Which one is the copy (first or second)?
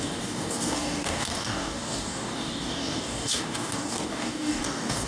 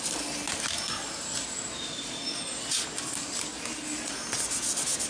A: first